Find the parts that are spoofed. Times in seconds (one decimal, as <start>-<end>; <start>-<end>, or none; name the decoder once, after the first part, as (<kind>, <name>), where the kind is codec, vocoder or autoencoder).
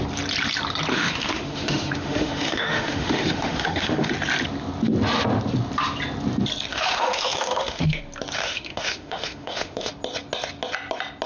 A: 0.9-4.1 (autoencoder, DAC-VAE); 6.7-8.0; 8.4-9.9